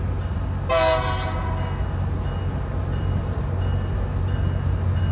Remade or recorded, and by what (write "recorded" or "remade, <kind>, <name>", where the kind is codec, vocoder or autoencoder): recorded